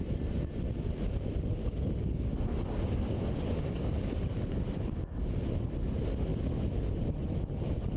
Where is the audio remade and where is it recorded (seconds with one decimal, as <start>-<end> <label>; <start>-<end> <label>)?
0.0-1.6 recorded; 1.6-5.3 remade; 5.3-8.0 recorded